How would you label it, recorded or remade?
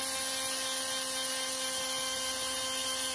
recorded